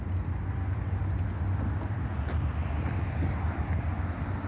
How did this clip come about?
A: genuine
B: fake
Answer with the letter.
A